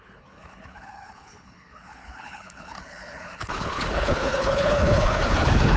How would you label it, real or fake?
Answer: fake